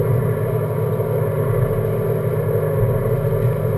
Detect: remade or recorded recorded